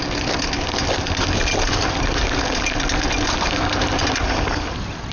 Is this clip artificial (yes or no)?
no